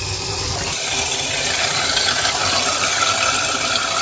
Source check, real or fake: real